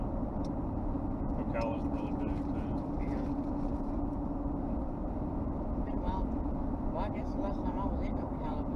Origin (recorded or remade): remade